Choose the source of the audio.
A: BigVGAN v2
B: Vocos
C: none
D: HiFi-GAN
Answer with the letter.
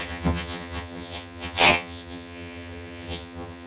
D